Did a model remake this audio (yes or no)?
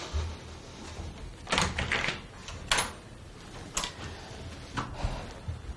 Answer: no